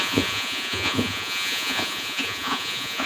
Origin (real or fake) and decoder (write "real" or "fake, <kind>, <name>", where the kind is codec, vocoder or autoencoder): fake, vocoder, Vocos